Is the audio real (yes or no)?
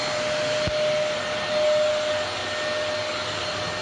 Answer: yes